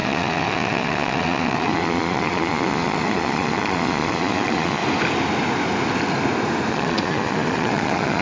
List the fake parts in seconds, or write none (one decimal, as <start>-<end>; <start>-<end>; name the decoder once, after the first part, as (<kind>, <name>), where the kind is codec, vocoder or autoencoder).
0.0-4.8 (vocoder, Vocos); 6.7-8.2